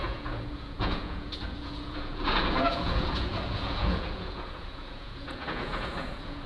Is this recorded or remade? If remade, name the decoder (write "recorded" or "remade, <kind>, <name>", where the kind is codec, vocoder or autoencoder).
remade, vocoder, Vocos